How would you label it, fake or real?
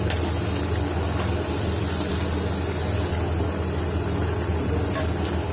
real